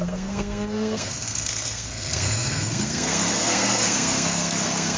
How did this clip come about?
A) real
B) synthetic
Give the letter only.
B